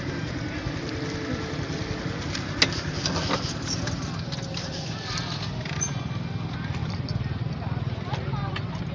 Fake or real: real